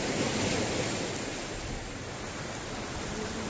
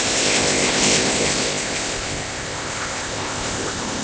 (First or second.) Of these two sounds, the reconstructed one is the second